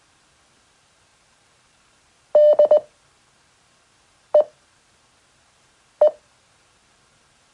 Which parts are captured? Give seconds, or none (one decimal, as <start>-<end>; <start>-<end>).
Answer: none